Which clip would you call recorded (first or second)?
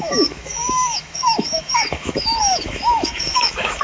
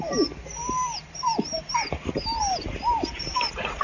second